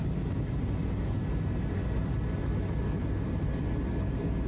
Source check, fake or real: real